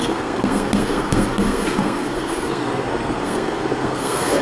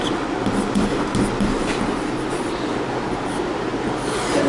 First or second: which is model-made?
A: first